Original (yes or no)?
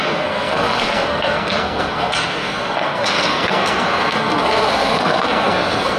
no